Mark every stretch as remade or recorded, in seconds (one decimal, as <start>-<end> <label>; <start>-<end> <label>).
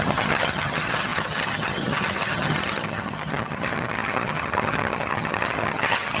0.0-6.2 remade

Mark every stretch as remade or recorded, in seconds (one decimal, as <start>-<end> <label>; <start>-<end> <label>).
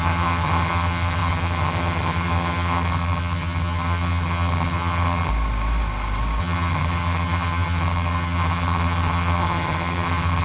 0.0-5.3 remade; 5.3-6.4 recorded; 6.4-10.4 remade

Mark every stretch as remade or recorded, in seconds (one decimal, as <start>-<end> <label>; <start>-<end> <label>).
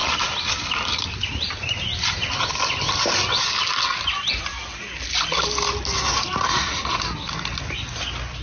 0.0-8.4 recorded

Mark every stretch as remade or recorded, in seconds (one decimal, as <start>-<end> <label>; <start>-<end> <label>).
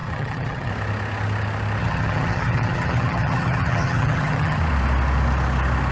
0.0-0.7 remade; 0.7-1.8 recorded; 1.8-4.6 remade; 4.6-5.9 recorded